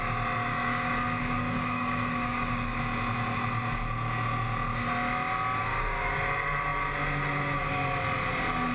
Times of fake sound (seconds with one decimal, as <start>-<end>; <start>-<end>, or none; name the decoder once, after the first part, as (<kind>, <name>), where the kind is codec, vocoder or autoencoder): 0.5-2.8 (codec, DAC); 5.6-6.1